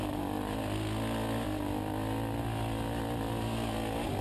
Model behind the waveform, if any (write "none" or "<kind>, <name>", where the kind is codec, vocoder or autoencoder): none